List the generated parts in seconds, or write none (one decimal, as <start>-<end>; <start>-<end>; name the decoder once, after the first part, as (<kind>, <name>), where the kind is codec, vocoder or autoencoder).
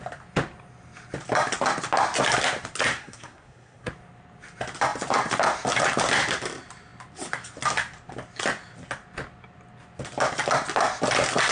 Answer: 2.9-3.9 (codec, SNAC)